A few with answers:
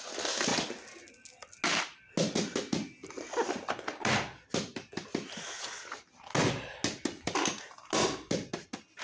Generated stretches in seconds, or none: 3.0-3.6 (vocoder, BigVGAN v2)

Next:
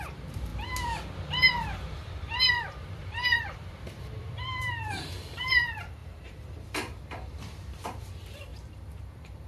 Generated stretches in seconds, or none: 0.0-0.5 (vocoder, BigVGAN v2); 1.3-9.5

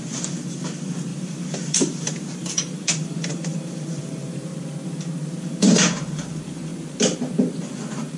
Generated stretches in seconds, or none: 0.0-4.5 (vocoder, BigVGAN v2); 5.4-6.7; 7.6-8.2